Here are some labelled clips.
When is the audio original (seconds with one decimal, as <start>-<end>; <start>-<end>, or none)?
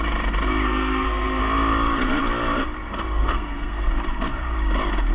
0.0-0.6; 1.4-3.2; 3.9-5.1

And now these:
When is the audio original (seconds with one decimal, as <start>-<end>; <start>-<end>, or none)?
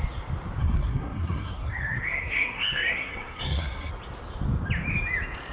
0.0-0.6; 3.9-5.5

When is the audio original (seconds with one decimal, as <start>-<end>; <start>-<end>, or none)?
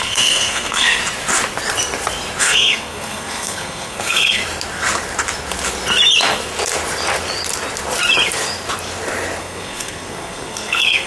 1.0-2.4; 4.4-9.4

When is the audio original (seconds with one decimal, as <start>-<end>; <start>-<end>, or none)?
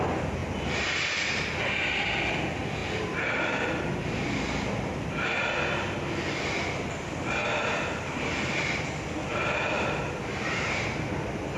0.0-11.6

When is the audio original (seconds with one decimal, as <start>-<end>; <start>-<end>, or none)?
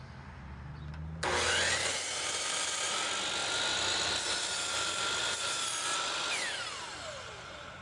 0.0-7.8